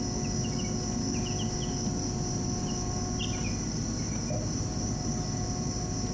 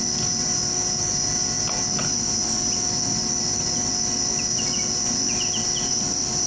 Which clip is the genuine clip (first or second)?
second